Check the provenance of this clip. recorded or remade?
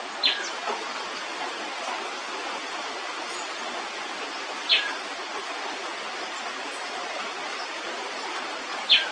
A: recorded